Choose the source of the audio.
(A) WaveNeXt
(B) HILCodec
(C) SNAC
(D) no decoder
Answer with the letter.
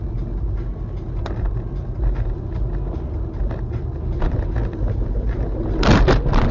D